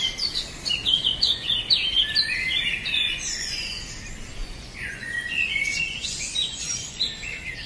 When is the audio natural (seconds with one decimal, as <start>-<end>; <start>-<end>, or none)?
0.0-1.0; 1.6-2.8; 3.8-4.4; 7.0-7.7